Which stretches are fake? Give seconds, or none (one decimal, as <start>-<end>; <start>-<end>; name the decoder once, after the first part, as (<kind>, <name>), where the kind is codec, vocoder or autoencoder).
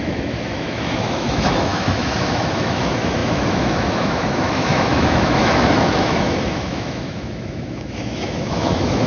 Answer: 0.0-9.1 (autoencoder, DAC-VAE)